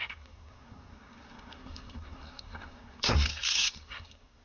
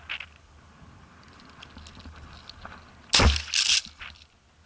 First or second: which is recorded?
second